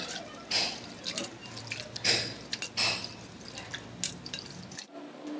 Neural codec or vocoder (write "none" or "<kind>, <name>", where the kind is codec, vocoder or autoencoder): none